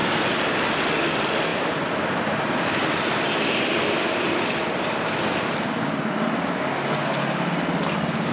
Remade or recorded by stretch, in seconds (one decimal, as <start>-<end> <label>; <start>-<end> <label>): 0.0-1.5 recorded; 1.5-4.7 remade; 4.7-8.3 recorded